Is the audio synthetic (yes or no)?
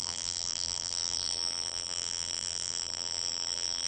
yes